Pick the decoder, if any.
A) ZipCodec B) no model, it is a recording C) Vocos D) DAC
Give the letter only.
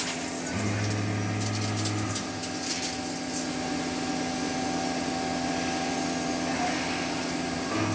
B